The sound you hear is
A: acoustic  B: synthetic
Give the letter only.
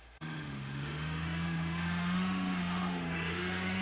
B